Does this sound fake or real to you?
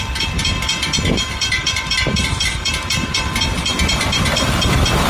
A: fake